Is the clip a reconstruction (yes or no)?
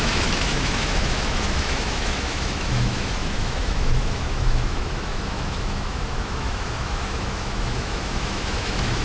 yes